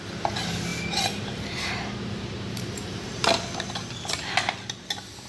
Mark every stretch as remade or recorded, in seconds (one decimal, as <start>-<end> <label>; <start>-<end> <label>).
0.0-0.7 recorded; 0.7-3.9 remade; 3.9-5.3 recorded